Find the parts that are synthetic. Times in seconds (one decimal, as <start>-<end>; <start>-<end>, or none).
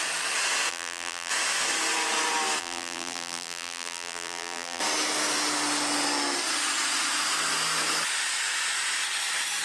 0.7-1.3; 2.6-4.8